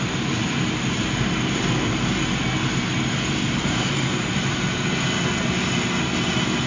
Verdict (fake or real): real